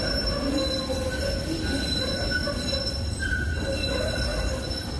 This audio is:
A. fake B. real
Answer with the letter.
B